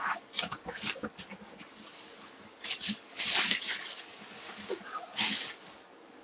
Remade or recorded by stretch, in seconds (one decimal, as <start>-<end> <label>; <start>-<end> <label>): 0.0-6.2 remade